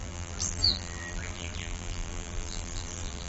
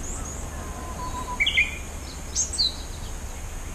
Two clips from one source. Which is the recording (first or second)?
second